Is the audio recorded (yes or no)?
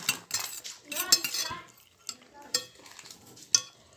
yes